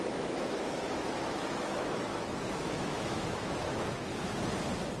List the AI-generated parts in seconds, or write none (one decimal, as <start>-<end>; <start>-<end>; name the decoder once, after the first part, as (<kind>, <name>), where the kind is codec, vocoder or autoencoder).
0.0-4.1 (autoencoder, DAC-VAE)